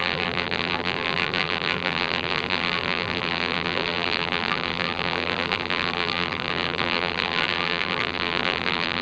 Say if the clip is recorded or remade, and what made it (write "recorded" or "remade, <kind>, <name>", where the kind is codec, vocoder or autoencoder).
remade, vocoder, BigVGAN v2